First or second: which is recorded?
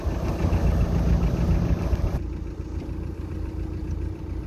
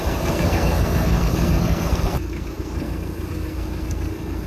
first